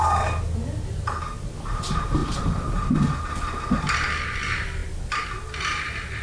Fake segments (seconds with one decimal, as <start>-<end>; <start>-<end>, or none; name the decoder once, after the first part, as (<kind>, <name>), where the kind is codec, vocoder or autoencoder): none